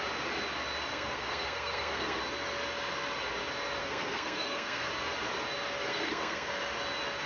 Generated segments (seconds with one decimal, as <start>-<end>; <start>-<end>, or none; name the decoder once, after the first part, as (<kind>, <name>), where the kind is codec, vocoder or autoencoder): 0.9-2.2 (codec, SNAC); 3.8-4.9; 5.9-6.5